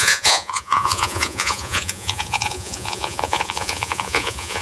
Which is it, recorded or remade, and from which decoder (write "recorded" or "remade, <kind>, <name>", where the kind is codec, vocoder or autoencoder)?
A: remade, vocoder, Vocos